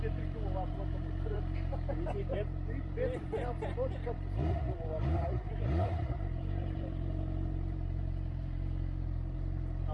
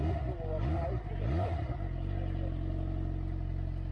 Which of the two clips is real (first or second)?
second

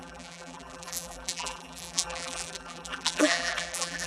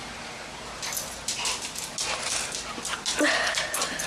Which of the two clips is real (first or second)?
second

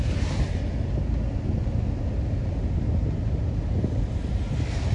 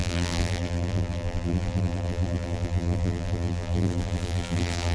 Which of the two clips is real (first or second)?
first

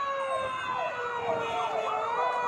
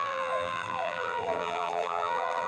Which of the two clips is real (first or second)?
first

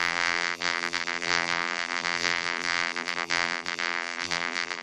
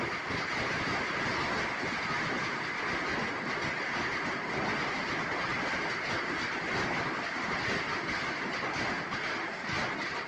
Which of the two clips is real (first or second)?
second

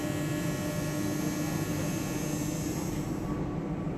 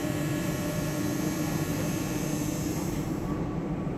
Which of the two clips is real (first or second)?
first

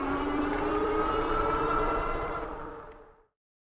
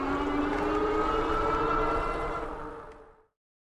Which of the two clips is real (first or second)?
second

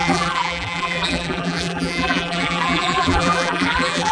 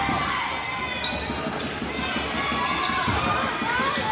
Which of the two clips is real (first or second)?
second